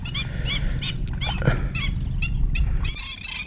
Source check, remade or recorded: recorded